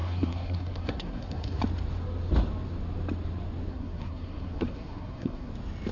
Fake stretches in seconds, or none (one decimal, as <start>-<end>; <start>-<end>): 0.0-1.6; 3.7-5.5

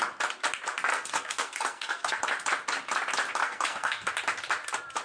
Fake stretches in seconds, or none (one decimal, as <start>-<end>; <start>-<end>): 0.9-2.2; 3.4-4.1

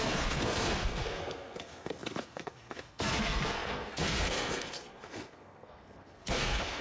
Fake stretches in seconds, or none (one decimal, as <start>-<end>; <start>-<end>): 0.0-6.8